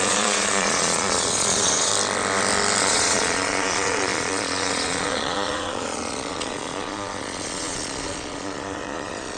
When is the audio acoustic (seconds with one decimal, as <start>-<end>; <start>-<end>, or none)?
1.9-2.8